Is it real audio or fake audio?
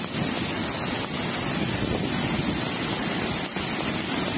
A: real